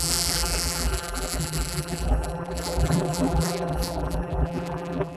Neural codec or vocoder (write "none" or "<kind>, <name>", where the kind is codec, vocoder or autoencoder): vocoder, BigVGAN v2